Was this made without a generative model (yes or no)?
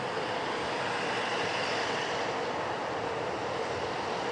yes